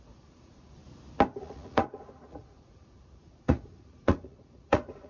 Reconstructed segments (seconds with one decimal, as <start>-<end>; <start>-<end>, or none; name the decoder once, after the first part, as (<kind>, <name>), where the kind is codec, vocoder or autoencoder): 0.0-0.8 (vocoder, Vocos); 1.4-5.1